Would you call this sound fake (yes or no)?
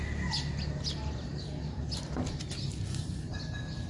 no